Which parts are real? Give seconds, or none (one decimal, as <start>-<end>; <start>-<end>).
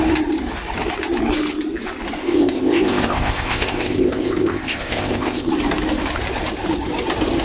0.0-2.2; 5.5-7.4